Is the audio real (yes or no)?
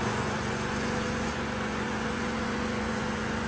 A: no